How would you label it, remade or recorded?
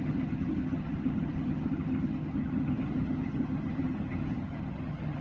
remade